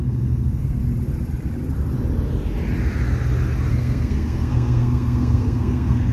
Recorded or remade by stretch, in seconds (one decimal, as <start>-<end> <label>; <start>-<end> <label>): 0.0-0.8 remade; 0.8-3.7 recorded; 3.7-6.1 remade

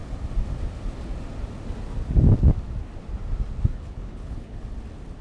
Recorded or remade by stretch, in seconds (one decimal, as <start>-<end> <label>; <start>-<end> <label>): 0.0-3.7 recorded; 3.7-4.6 remade; 4.6-5.2 recorded

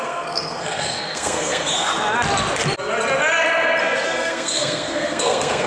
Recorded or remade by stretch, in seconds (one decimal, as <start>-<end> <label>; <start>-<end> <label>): 0.0-1.9 remade; 1.9-3.8 recorded; 3.8-5.7 remade

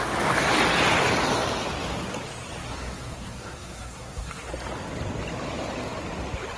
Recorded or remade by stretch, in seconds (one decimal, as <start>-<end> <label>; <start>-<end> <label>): 0.0-2.6 recorded; 2.6-4.5 remade; 4.5-6.6 recorded

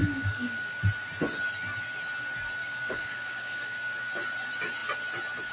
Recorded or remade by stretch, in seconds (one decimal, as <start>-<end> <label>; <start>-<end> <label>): 0.0-0.8 remade; 0.8-2.6 recorded; 2.6-3.9 remade; 3.9-5.5 recorded

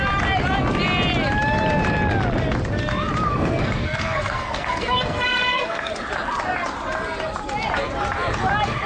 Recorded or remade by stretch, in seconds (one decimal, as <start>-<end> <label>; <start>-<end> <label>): 0.0-3.3 recorded; 3.3-5.9 remade; 5.9-8.9 recorded

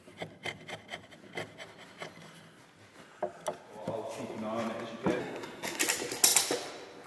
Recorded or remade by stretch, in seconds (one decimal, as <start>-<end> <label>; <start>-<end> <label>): 0.0-5.2 recorded; 5.2-5.8 remade; 5.8-7.1 recorded

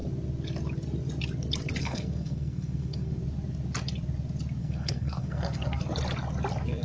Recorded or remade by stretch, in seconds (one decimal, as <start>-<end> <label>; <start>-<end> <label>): 0.0-1.8 recorded; 1.8-3.2 remade; 3.2-4.6 recorded; 4.6-5.8 remade; 5.8-6.8 recorded